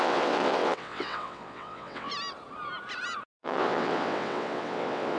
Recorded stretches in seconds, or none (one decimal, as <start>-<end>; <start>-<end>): 2.1-3.4